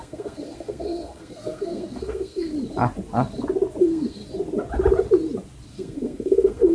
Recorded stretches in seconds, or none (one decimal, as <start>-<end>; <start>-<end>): 2.5-3.8; 4.2-5.7